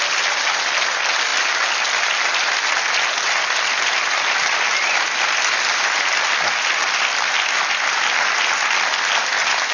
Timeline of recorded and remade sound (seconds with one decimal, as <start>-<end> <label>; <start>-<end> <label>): 0.0-9.7 recorded